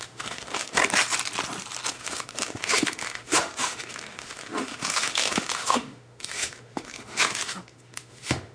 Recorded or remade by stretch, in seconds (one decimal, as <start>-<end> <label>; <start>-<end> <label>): 0.0-0.8 remade; 0.8-1.9 recorded; 1.9-8.5 remade